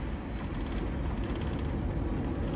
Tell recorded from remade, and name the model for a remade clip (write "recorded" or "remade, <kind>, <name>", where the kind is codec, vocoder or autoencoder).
recorded